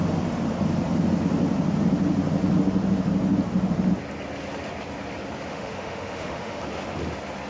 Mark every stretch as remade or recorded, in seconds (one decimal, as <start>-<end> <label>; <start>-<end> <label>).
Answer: 0.0-5.5 recorded; 5.5-6.6 remade; 6.6-7.5 recorded